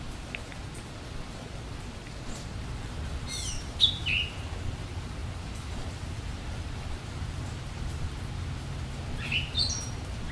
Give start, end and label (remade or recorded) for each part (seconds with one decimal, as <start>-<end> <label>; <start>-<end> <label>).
0.0-10.3 recorded